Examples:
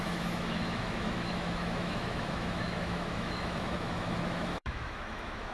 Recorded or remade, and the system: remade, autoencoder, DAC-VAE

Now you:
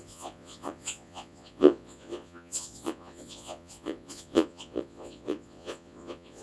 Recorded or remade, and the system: remade, vocoder, Vocos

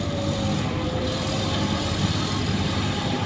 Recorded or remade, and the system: remade, vocoder, BigVGAN v2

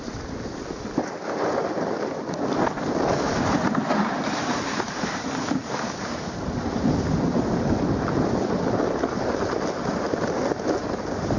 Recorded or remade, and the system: remade, vocoder, BigVGAN v2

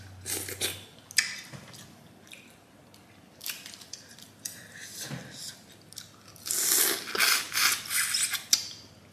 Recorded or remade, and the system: recorded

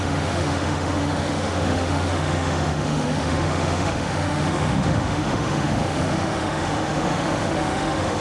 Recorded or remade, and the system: remade, autoencoder, DAC-VAE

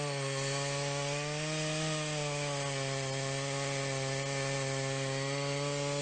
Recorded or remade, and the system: recorded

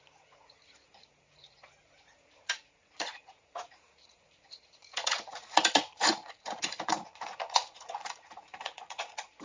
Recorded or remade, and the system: remade, vocoder, Vocos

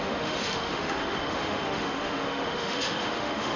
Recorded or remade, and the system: remade, autoencoder, DAC-VAE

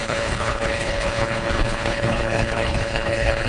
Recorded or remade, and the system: remade, codec, HILCodec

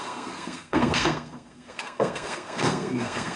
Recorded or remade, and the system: remade, codec, SNAC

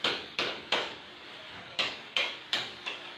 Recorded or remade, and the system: remade, codec, DAC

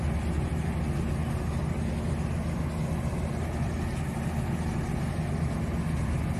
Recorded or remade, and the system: recorded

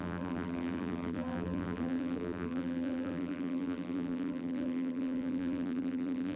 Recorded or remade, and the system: remade, vocoder, BigVGAN v2